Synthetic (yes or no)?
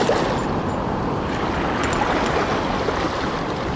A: no